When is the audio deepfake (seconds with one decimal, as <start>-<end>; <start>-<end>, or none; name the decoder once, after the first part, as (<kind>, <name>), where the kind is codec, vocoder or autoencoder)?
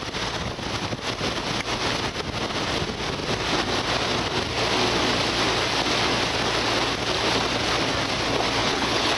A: 8.6-9.2 (codec, HILCodec)